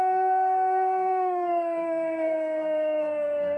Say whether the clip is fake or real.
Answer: fake